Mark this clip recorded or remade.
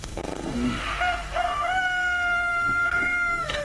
remade